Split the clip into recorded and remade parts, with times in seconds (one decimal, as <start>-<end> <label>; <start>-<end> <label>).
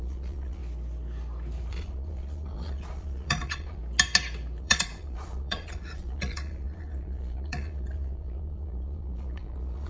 0.0-0.6 remade; 0.6-1.7 recorded; 1.7-3.8 remade; 3.8-4.6 recorded; 4.6-9.9 remade